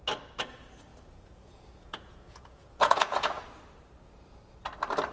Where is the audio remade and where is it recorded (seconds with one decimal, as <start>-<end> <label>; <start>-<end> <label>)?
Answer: 0.0-0.9 recorded; 0.9-3.4 remade; 3.4-5.1 recorded